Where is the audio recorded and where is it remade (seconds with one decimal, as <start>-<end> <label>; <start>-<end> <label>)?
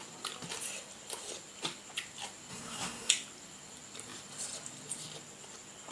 0.0-2.5 recorded; 2.5-3.1 remade; 3.1-5.9 recorded